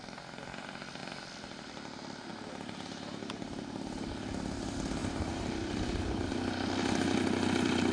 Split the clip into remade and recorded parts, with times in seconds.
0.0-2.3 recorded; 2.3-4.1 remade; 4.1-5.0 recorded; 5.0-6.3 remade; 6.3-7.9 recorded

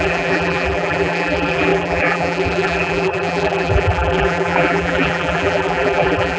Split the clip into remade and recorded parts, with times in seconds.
0.0-6.4 remade

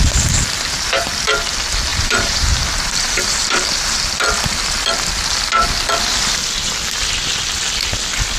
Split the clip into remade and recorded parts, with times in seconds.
0.0-1.9 recorded; 1.9-4.1 remade; 4.1-8.4 recorded

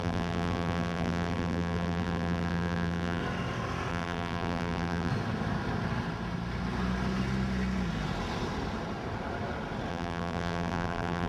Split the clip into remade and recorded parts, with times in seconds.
0.0-3.2 remade; 3.2-3.9 recorded; 3.9-5.1 remade; 5.1-9.9 recorded; 9.9-11.3 remade